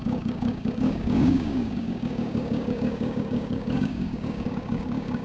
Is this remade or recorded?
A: remade